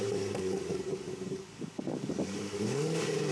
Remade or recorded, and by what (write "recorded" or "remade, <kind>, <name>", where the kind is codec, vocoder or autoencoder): remade, codec, DAC